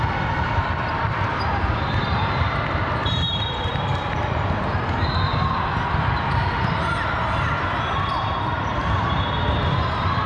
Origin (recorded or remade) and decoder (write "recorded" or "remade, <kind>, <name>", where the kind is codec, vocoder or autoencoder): remade, vocoder, BigVGAN v2